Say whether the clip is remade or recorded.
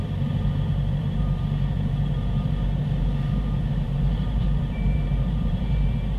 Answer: remade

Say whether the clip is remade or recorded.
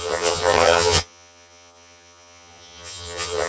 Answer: remade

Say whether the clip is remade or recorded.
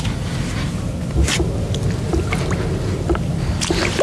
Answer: recorded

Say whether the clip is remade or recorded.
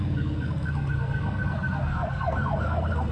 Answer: remade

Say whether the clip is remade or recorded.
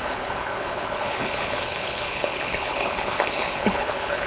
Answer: remade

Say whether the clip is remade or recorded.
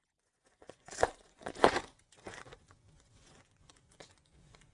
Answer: remade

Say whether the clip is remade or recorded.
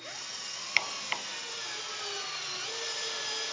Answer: recorded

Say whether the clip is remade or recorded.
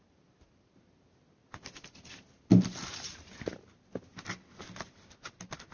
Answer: recorded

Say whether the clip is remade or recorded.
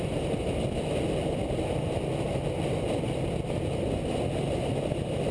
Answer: recorded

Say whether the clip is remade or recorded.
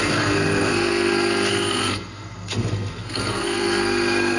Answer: remade